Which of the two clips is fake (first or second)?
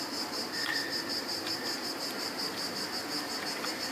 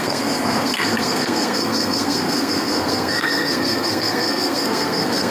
second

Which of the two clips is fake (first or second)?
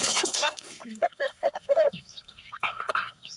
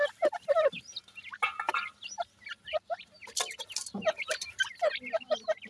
first